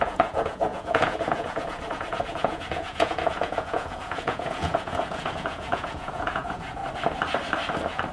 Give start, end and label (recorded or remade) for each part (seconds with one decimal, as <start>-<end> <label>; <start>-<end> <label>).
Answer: 0.0-6.8 remade; 6.8-8.1 recorded

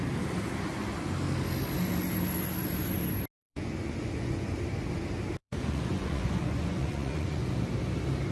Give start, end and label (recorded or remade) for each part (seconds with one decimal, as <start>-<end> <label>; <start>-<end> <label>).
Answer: 0.0-3.4 recorded; 3.4-4.6 remade; 4.6-5.4 recorded; 5.4-7.5 remade; 7.5-8.3 recorded

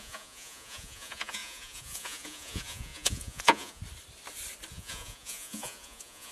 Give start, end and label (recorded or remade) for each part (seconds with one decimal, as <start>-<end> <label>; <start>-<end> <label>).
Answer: 0.0-3.8 remade; 3.8-4.7 recorded; 4.7-6.3 remade